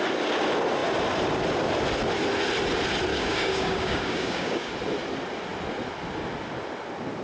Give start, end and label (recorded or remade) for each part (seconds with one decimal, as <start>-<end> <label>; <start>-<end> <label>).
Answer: 0.0-3.1 recorded; 3.1-4.7 remade; 4.7-7.2 recorded